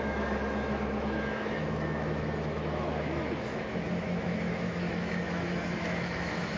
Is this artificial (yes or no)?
yes